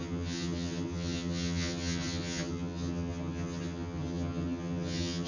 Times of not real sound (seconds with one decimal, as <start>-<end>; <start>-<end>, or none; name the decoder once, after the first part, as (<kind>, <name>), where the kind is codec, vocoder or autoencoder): 0.0-5.3 (vocoder, HiFi-GAN)